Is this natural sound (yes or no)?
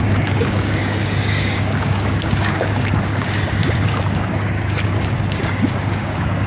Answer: no